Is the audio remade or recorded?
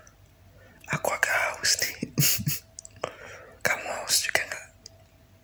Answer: recorded